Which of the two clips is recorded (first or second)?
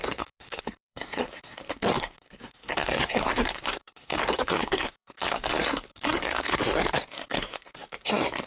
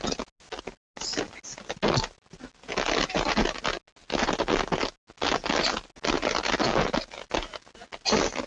second